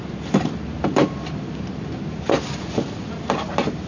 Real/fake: real